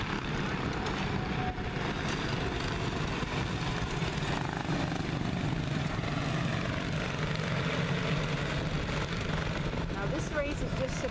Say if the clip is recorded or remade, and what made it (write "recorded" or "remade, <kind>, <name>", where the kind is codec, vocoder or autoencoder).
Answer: recorded